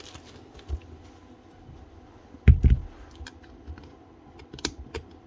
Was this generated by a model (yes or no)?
no